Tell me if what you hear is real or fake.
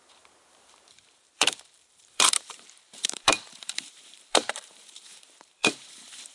fake